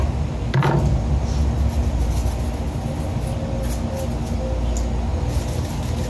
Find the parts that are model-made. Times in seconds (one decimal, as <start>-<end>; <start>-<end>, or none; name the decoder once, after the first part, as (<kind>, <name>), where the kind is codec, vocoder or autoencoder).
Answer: none